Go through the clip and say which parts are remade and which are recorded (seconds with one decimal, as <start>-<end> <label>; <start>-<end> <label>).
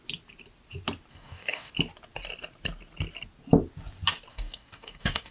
0.0-1.1 recorded; 1.1-1.7 remade; 1.7-4.3 recorded; 4.3-5.3 remade